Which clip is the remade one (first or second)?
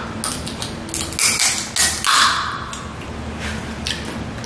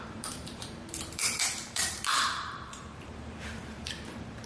second